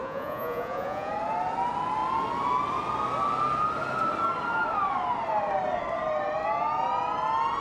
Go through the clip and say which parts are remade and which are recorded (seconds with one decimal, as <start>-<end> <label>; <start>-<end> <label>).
0.0-1.1 remade; 1.1-7.6 recorded

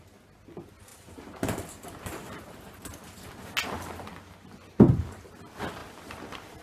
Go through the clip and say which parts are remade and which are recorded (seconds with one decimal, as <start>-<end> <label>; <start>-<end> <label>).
0.0-0.9 recorded; 0.9-2.8 remade; 2.8-6.6 recorded